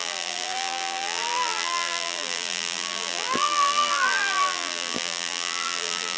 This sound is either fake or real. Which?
fake